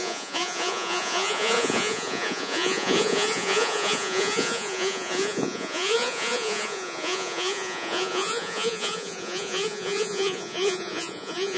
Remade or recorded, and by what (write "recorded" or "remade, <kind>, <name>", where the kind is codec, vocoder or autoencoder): remade, vocoder, Vocos